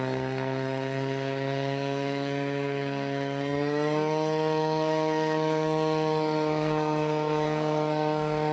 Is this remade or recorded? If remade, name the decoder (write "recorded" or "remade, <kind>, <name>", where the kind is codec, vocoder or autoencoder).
remade, codec, SNAC